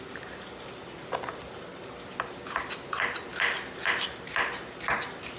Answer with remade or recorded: recorded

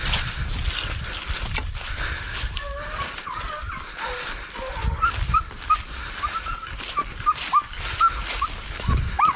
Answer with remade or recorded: recorded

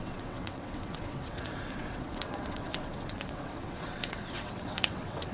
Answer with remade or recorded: remade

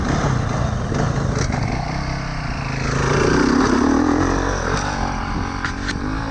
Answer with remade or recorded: recorded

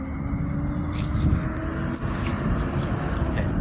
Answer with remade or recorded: recorded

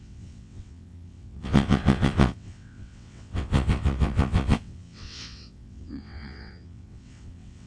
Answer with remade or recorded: remade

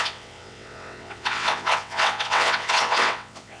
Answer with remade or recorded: remade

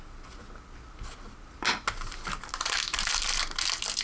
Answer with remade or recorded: recorded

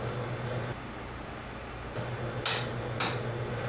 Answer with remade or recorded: recorded